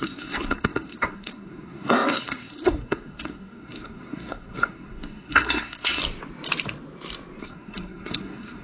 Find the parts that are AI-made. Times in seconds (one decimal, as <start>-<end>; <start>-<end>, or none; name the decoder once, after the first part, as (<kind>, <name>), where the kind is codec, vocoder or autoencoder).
0.0-6.0 (codec, SNAC); 7.4-8.6